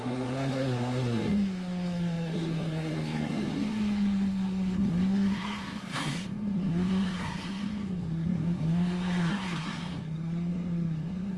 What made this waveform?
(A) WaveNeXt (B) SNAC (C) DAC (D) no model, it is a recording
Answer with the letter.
B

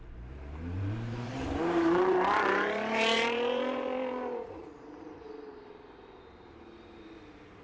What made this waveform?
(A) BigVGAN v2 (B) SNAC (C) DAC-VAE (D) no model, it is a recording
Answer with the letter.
A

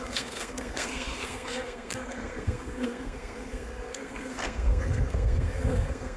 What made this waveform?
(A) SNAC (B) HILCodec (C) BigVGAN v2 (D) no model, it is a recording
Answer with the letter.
A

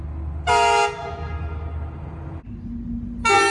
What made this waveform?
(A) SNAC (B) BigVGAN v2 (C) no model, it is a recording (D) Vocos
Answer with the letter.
C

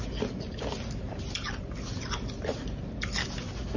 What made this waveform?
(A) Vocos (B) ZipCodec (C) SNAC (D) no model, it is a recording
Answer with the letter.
D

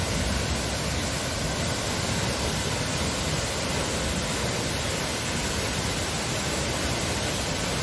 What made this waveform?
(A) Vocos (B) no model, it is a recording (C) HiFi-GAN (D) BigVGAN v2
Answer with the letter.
B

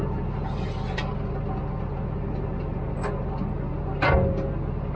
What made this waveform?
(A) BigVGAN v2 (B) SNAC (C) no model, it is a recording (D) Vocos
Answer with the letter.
C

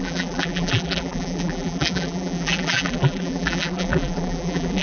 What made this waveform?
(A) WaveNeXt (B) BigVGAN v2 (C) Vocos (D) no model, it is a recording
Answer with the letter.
B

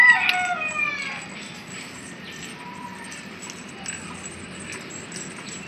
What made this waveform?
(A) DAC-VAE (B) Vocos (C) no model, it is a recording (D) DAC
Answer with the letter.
C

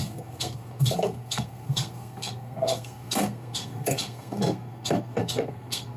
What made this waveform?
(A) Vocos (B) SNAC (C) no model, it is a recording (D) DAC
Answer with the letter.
B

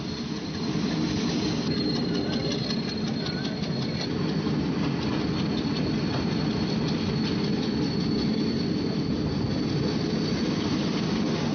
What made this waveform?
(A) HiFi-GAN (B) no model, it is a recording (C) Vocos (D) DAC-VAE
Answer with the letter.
B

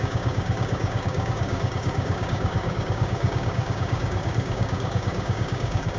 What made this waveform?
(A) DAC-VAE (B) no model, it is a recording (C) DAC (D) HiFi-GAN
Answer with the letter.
C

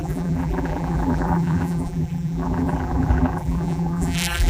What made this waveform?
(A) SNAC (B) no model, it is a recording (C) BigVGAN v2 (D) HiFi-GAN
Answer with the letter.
C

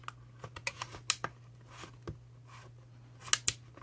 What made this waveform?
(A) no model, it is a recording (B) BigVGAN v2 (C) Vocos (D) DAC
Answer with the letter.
A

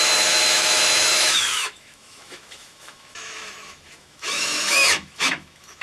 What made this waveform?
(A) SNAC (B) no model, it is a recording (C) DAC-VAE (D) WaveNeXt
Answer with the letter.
C